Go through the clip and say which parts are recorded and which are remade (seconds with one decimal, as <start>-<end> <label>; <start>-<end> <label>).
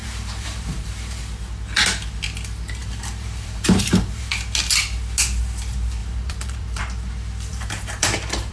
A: 0.0-1.2 remade; 1.2-2.8 recorded; 2.8-4.3 remade; 4.3-6.0 recorded; 6.0-6.8 remade; 6.8-7.5 recorded; 7.5-8.5 remade